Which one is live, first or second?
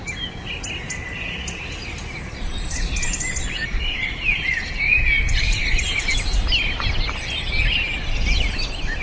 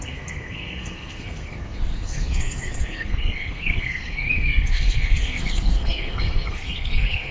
first